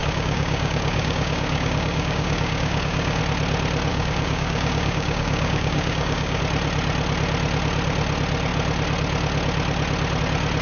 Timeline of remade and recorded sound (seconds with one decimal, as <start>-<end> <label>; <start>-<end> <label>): 0.0-3.2 remade; 3.2-3.9 recorded; 3.9-6.4 remade; 6.4-10.6 recorded